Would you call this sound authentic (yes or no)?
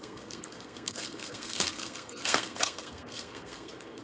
no